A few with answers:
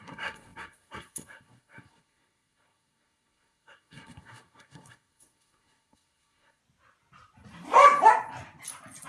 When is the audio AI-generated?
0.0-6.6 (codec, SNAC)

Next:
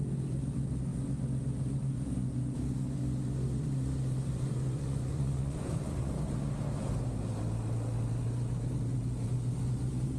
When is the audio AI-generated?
4.5-6.1 (vocoder, Vocos)